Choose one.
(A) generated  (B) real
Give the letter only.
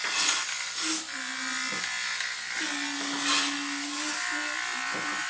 B